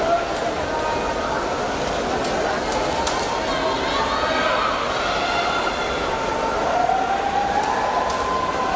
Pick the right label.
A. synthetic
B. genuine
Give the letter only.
B